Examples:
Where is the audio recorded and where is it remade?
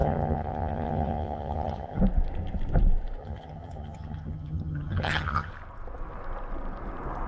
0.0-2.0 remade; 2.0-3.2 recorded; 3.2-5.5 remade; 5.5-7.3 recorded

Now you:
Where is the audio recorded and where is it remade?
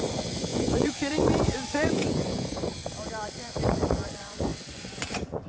0.0-2.8 remade; 2.8-3.6 recorded; 3.6-5.5 remade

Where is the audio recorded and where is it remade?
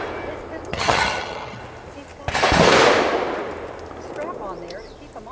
0.0-0.7 recorded; 0.7-1.6 remade; 1.6-5.3 recorded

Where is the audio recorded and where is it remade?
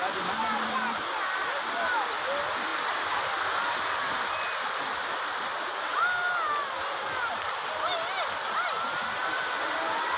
0.0-10.2 recorded